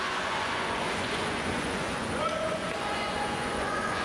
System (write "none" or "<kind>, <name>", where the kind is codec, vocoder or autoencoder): vocoder, Vocos